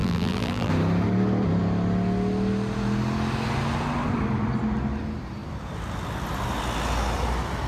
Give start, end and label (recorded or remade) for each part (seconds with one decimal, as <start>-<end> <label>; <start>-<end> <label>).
0.0-0.7 remade; 0.7-7.7 recorded